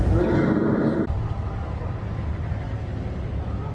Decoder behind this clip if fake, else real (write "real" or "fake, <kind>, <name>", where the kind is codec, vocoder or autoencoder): real